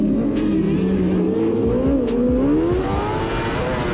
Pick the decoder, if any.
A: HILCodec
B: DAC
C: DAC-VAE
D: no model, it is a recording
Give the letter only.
D